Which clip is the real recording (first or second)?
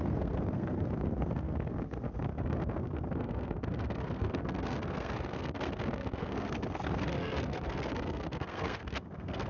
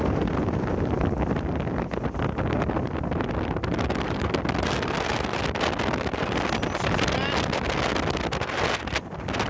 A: second